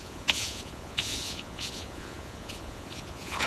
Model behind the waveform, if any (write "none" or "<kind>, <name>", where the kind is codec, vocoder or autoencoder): vocoder, Vocos